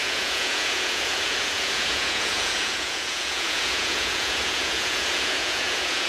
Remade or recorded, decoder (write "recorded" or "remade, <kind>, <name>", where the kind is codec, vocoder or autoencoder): remade, vocoder, Vocos